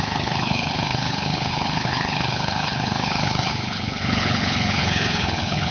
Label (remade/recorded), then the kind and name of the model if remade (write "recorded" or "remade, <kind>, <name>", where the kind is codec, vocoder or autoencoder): remade, codec, HILCodec